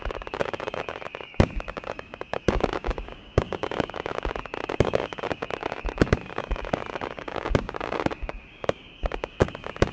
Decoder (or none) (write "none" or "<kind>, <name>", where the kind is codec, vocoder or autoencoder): codec, DAC